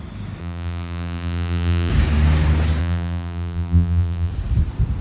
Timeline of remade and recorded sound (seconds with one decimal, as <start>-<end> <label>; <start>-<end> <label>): 0.0-0.4 recorded; 0.4-1.9 remade; 1.9-2.8 recorded; 2.8-4.3 remade; 4.3-5.0 recorded